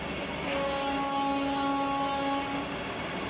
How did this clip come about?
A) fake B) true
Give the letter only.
B